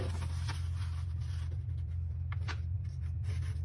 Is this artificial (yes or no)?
no